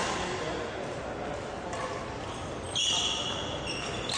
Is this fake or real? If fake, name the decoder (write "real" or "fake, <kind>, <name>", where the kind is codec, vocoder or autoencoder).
real